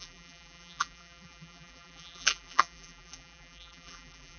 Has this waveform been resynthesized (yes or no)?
yes